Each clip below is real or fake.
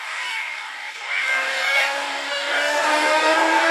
fake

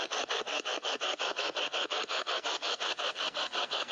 fake